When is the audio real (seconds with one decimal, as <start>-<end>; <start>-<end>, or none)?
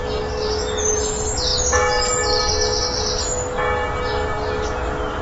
0.0-5.2